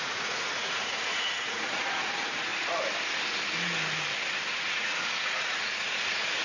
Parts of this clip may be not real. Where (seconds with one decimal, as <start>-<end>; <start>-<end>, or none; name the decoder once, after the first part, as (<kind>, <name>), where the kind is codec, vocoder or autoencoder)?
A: 0.0-2.5 (vocoder, Vocos); 4.5-6.4